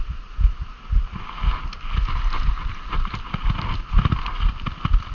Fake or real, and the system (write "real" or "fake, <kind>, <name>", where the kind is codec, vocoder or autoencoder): real